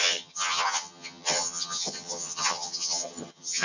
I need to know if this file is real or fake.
fake